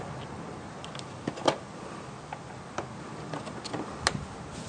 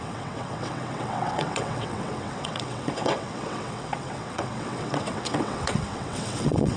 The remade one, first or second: second